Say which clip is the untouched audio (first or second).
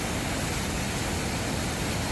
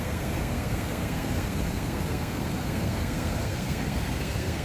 first